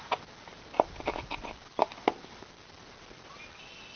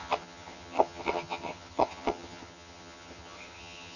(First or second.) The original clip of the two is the first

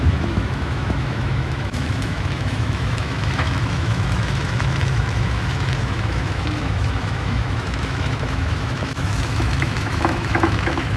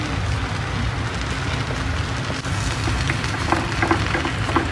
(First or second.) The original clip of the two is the second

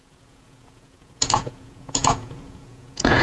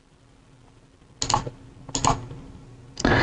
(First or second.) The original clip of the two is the second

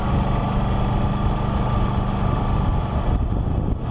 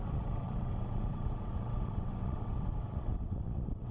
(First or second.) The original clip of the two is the first